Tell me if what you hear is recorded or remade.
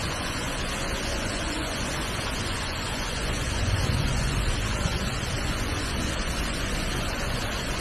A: remade